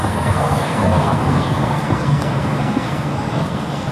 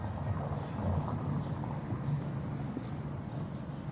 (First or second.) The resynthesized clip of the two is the first